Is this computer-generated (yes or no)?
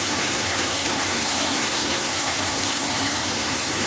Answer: yes